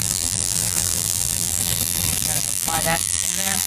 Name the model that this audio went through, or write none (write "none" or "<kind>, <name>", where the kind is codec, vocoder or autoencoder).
vocoder, BigVGAN v2